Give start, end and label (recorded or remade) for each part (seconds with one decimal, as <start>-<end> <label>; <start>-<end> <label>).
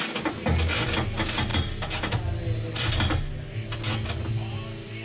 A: 0.0-5.0 recorded